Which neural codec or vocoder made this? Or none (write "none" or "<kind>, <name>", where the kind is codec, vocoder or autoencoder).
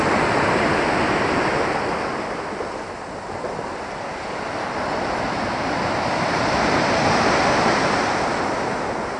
none